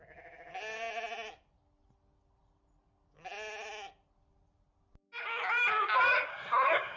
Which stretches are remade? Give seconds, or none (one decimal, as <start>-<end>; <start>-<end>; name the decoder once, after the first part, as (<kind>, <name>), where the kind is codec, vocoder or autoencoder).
6.3-7.0 (codec, SNAC)